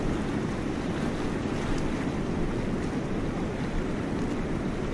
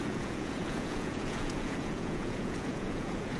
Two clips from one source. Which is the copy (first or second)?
second